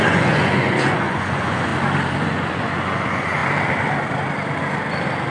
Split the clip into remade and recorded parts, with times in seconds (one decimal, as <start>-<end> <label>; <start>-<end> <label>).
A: 0.0-1.7 remade; 1.7-2.2 recorded; 2.2-3.4 remade; 3.4-5.3 recorded